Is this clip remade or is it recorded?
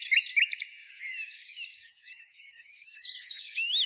remade